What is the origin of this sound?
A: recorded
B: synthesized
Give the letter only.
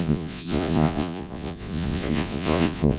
B